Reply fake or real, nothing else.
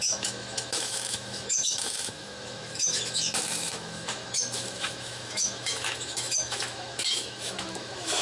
fake